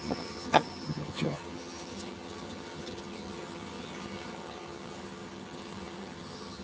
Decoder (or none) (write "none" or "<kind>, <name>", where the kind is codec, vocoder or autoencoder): vocoder, HiFi-GAN